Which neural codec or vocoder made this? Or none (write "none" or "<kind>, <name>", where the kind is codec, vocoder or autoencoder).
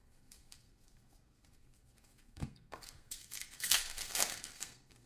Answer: codec, SNAC